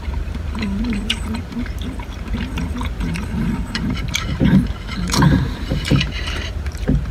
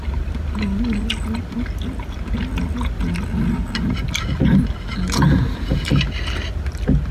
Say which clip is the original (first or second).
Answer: second